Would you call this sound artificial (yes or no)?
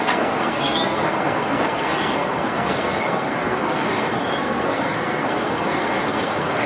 yes